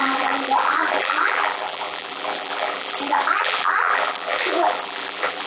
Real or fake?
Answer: fake